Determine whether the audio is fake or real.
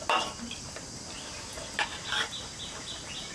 real